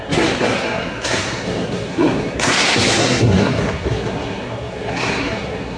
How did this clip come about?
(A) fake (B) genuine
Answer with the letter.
A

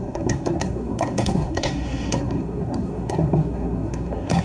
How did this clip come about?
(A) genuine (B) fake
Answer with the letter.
B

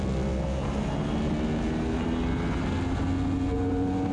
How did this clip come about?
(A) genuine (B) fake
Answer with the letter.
A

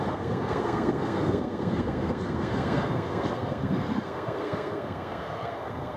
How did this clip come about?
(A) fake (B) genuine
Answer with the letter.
A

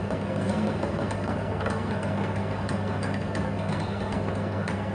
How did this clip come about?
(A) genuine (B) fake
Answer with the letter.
B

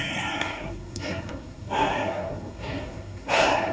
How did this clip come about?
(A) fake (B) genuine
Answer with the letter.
A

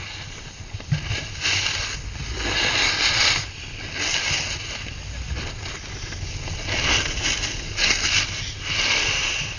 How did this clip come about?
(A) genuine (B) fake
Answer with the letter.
A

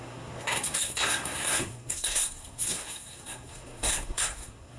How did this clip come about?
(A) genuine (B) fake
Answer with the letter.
B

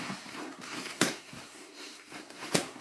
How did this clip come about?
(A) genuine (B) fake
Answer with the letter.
B